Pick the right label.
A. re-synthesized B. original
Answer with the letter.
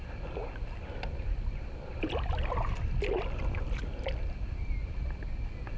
B